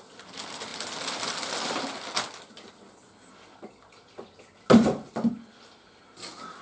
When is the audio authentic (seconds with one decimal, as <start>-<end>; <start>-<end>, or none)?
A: 0.0-6.6